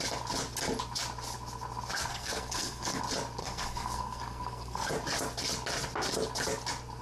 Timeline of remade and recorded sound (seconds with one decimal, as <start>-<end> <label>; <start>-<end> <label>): 0.0-2.1 recorded; 2.1-3.0 remade; 3.0-3.4 recorded; 3.4-4.9 remade; 4.9-7.0 recorded